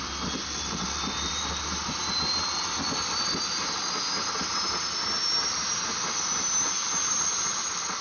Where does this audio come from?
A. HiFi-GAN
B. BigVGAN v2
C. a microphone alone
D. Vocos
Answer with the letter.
B